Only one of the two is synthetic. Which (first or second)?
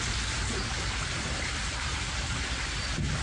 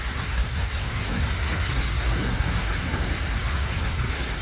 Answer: second